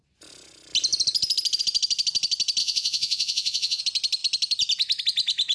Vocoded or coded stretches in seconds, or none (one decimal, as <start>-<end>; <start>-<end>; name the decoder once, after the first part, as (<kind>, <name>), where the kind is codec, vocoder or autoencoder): 2.6-3.8 (vocoder, Vocos)